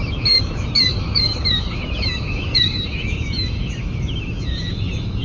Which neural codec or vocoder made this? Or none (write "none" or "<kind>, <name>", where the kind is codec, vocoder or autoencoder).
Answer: autoencoder, DAC-VAE